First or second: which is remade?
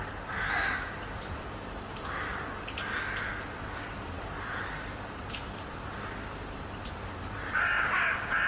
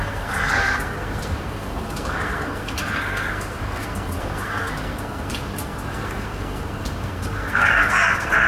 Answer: second